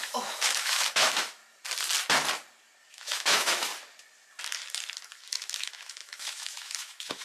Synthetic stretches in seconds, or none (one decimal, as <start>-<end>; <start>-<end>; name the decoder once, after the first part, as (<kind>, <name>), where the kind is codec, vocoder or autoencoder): 0.0-1.4 (autoencoder, DAC-VAE); 2.9-3.7; 5.2-7.2